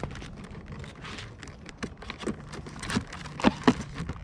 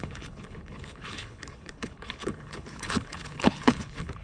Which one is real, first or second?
first